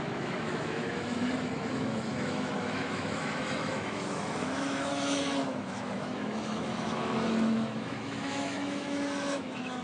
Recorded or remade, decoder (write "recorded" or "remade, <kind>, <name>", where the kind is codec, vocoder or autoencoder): remade, autoencoder, DAC-VAE